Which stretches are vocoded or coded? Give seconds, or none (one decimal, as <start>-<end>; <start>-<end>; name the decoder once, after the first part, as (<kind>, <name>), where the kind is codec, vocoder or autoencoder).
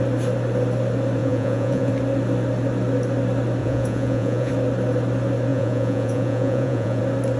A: 1.2-1.9 (vocoder, Vocos); 3.6-4.5; 5.5-7.0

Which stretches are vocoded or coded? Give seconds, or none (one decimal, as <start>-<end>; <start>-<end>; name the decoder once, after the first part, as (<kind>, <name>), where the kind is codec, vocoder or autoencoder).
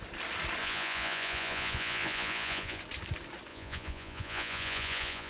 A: 0.6-2.8 (vocoder, Vocos); 3.5-5.3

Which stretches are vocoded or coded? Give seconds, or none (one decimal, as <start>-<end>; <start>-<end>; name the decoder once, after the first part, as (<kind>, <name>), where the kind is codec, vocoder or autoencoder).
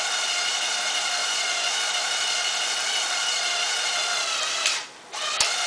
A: 1.2-1.9 (vocoder, Vocos)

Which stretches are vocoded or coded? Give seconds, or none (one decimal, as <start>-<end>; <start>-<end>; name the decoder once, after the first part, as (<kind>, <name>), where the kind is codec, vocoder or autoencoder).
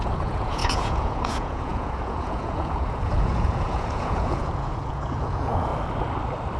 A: 0.0-5.7 (vocoder, Vocos)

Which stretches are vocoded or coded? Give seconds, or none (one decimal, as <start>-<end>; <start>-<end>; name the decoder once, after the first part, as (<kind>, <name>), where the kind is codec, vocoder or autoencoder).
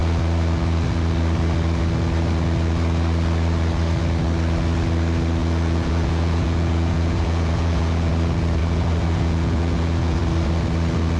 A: 5.4-8.1 (vocoder, Vocos); 8.6-10.2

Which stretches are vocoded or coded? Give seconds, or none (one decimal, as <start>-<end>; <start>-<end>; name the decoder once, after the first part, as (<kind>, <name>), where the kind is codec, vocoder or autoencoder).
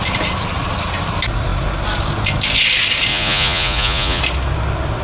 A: 3.1-4.2 (vocoder, Vocos)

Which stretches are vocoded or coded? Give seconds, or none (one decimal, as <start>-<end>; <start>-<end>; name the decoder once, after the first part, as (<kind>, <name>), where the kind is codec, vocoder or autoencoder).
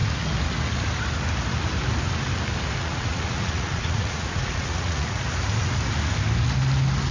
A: 2.8-5.2 (vocoder, Vocos)